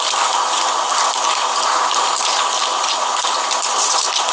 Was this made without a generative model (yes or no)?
yes